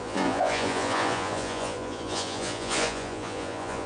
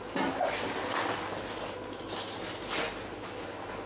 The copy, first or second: first